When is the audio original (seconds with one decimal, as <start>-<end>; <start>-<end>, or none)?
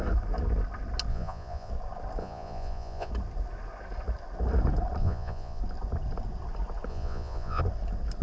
0.0-1.1; 1.7-2.2; 3.1-5.0; 5.6-6.9; 7.6-8.2